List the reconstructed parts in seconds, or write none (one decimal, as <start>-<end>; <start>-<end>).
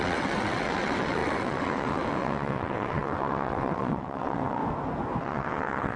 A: 0.0-4.6; 5.2-6.0